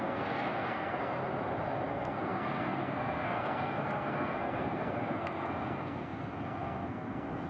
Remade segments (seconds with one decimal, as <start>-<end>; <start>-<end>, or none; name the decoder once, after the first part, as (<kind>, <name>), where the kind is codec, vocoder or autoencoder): 0.0-1.2 (codec, SNAC); 1.9-7.5

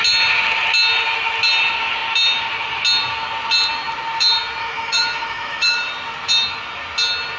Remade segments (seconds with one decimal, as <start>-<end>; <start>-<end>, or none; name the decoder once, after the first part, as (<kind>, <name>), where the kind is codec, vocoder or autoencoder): 4.6-5.9 (autoencoder, DAC-VAE)